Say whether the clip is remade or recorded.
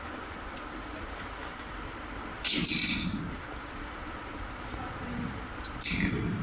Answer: recorded